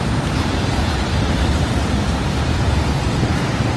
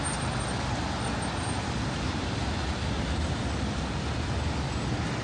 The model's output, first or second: first